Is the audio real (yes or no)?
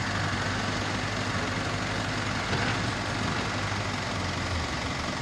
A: yes